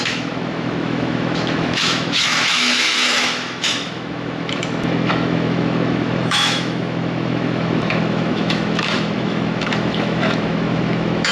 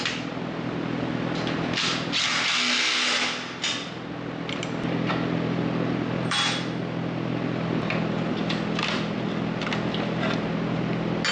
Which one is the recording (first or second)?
second